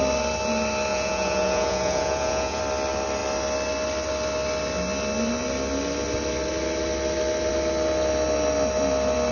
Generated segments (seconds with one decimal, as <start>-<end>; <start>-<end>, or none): 0.9-2.6